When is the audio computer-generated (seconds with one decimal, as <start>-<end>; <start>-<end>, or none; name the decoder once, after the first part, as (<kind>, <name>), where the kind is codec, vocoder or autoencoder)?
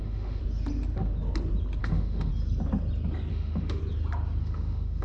0.0-0.4 (autoencoder, DAC-VAE); 1.8-2.3; 3.3-3.8; 4.4-5.0